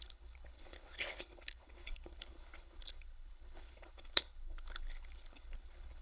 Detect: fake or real fake